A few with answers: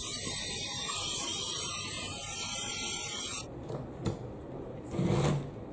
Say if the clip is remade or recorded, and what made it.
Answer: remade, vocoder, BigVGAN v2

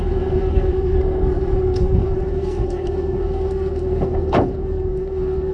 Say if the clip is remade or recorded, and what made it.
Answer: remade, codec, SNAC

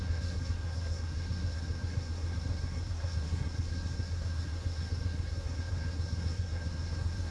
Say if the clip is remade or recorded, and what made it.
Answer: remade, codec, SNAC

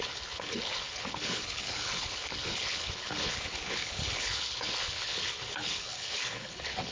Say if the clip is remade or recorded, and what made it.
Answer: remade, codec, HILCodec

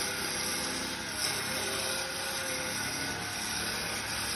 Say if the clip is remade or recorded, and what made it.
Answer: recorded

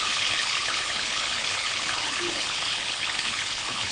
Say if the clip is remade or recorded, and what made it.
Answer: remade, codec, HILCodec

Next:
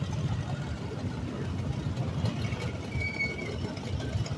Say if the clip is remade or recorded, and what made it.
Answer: recorded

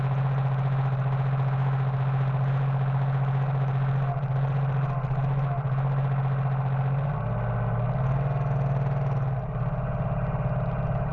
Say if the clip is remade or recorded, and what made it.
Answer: recorded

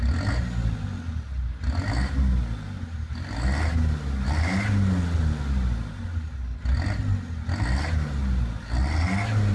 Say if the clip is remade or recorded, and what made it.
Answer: recorded